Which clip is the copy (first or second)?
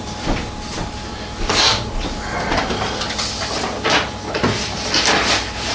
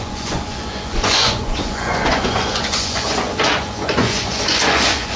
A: second